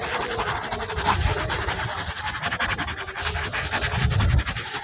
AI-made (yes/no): no